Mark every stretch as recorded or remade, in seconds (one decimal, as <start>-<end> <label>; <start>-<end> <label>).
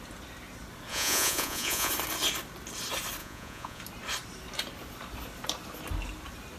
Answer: 0.0-0.9 recorded; 0.9-1.9 remade; 1.9-3.2 recorded; 3.2-3.8 remade; 3.8-6.6 recorded